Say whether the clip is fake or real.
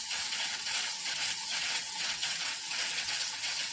fake